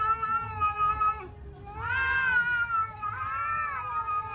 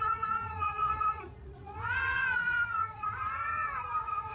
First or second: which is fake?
second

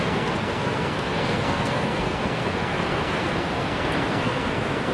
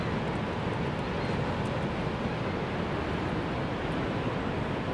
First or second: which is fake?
first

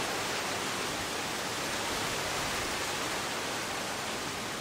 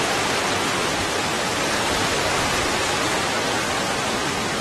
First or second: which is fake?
second